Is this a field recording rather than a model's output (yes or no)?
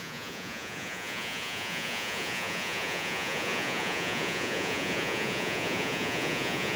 no